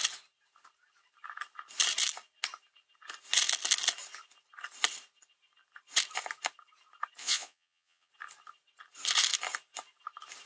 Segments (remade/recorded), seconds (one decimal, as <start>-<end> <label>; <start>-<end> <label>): 0.0-7.2 recorded; 7.2-8.1 remade; 8.1-10.5 recorded